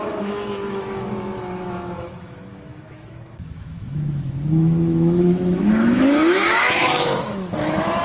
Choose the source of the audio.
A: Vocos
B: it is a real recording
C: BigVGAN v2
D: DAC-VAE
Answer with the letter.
D